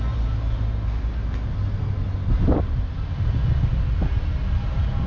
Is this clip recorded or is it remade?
recorded